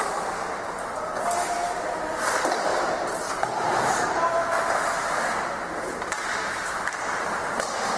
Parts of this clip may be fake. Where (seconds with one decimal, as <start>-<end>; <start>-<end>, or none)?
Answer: 0.0-1.1; 1.7-2.7; 5.8-8.0